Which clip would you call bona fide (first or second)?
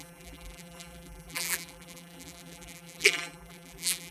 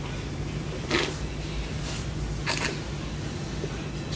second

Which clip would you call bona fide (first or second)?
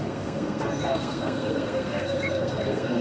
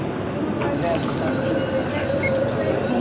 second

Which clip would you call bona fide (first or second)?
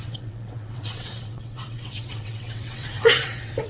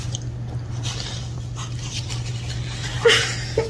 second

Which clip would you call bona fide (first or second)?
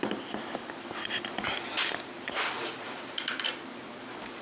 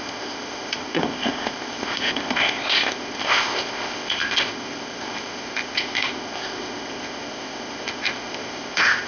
first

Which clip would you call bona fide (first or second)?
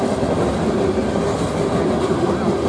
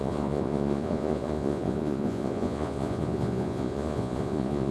first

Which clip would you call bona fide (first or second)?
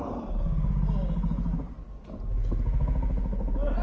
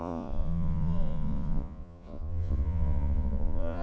first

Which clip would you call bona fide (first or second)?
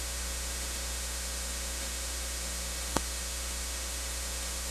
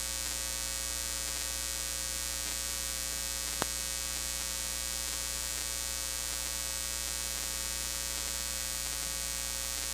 second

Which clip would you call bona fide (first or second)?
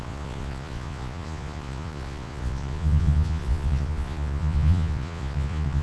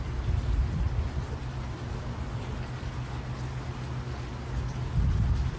second